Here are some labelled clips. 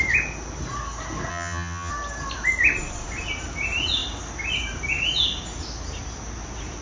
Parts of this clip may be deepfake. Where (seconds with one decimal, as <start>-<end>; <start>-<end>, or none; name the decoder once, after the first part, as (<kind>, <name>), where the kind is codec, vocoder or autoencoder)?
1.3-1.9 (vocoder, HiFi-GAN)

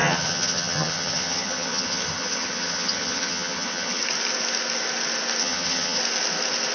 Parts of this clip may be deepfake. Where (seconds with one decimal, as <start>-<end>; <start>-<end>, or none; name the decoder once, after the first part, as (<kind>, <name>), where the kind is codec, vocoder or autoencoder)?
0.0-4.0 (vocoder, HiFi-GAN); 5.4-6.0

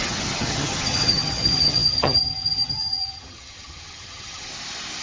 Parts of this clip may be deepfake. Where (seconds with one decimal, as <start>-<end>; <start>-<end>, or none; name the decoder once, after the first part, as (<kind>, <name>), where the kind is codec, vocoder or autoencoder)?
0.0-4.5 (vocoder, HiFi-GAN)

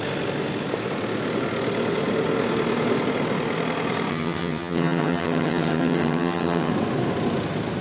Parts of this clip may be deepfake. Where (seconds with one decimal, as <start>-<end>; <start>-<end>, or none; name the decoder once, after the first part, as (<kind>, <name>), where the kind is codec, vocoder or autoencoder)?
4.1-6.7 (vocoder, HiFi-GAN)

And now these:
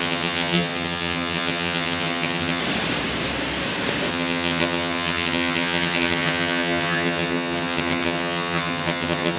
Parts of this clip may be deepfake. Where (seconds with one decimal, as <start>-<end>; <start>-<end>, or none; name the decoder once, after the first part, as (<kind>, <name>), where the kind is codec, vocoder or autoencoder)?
0.0-2.6 (vocoder, HiFi-GAN); 4.1-9.4

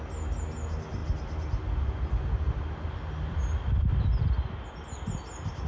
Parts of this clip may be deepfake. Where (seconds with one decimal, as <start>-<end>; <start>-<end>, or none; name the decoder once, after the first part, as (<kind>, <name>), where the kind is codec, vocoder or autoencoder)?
none

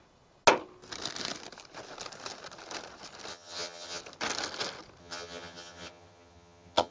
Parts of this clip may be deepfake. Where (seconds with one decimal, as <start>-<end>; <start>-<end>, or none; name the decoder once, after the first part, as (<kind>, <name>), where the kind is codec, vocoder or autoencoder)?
3.3-4.0 (vocoder, HiFi-GAN); 5.0-6.9

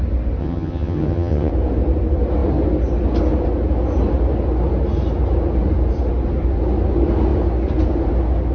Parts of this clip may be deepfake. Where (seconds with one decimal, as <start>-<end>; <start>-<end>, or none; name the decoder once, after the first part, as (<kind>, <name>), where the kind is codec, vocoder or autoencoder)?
0.4-1.5 (vocoder, HiFi-GAN)